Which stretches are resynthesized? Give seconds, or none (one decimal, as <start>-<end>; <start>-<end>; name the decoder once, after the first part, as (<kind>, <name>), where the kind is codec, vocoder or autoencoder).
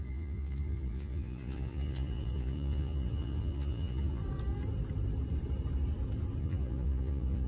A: 0.0-4.2 (vocoder, Vocos); 6.4-7.5